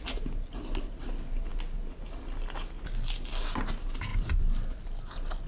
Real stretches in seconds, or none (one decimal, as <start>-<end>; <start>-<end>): 0.0-5.5